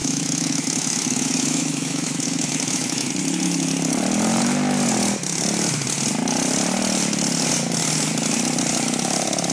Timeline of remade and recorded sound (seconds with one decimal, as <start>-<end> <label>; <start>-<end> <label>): 0.0-3.1 remade; 3.1-9.5 recorded